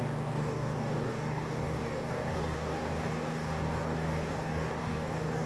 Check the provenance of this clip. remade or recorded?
remade